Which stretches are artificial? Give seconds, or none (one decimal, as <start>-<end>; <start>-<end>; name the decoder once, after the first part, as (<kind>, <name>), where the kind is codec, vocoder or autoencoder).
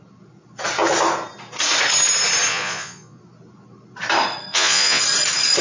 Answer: 2.5-3.2 (vocoder, Vocos); 4.5-5.0